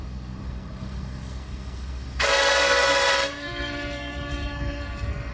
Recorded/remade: remade